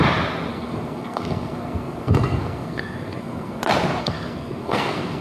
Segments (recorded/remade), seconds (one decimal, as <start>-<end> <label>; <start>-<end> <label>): 0.0-0.5 recorded; 0.5-3.6 remade; 3.6-4.0 recorded; 4.0-5.2 remade